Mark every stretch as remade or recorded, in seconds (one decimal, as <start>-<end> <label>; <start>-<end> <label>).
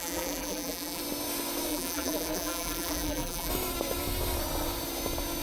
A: 0.0-1.0 remade; 1.0-1.7 recorded; 1.7-3.5 remade; 3.5-5.4 recorded